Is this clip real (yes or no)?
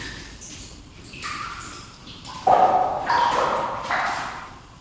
yes